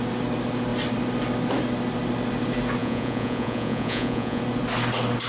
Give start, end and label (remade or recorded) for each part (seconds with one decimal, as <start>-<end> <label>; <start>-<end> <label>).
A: 0.0-2.8 recorded; 2.8-4.4 remade; 4.4-5.3 recorded